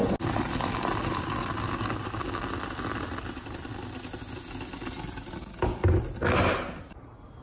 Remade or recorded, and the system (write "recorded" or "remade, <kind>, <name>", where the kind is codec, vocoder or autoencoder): recorded